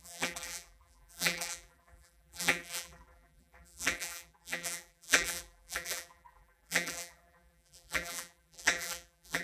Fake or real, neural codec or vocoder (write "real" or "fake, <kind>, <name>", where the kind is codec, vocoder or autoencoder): fake, vocoder, BigVGAN v2